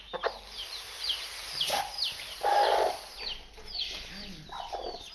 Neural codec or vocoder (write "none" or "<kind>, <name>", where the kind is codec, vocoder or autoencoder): none